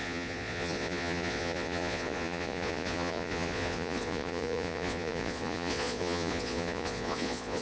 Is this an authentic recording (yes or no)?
no